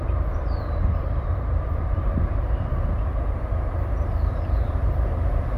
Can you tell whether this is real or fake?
fake